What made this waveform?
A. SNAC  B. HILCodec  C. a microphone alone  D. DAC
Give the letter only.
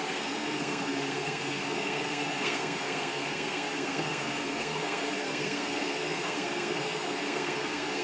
A